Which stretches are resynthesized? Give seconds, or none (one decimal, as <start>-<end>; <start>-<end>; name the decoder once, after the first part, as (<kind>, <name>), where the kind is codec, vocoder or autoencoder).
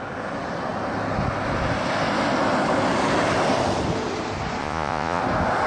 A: 4.6-5.2 (vocoder, Vocos)